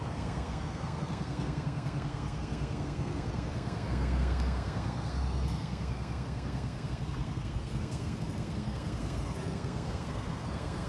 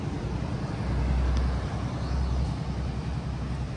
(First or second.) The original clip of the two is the second